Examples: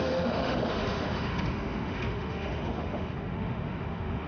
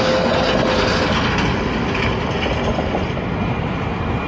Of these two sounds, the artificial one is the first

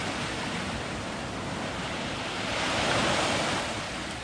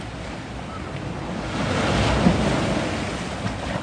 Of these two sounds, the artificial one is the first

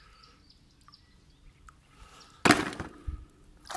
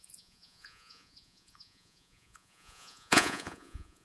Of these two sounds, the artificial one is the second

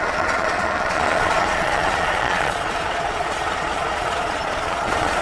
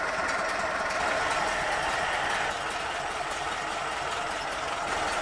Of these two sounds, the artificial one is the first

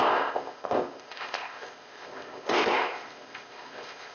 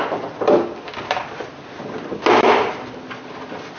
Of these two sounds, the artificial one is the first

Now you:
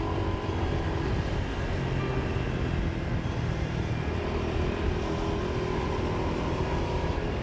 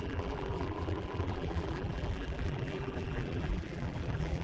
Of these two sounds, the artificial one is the second